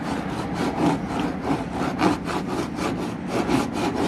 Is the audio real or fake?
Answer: real